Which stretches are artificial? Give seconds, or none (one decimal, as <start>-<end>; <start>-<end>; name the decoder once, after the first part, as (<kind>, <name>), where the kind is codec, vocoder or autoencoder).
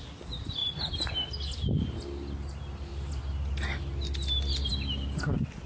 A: none